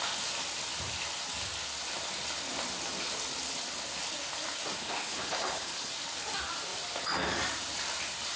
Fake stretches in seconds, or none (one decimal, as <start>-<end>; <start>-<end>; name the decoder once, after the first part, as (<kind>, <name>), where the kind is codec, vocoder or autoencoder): 4.8-5.9 (codec, HILCodec)